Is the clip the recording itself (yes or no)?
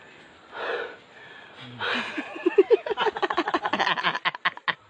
yes